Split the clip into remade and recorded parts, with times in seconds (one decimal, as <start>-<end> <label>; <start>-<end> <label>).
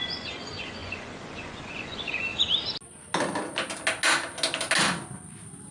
0.0-2.3 remade; 2.3-5.7 recorded